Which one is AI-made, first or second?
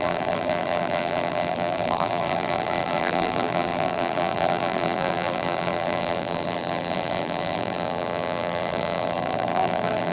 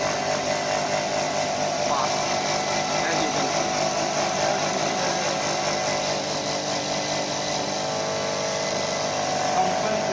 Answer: first